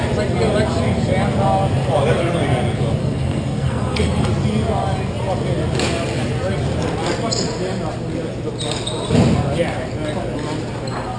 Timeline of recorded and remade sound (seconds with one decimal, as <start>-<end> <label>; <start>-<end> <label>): 0.0-3.0 recorded; 3.0-4.3 remade; 4.3-11.2 recorded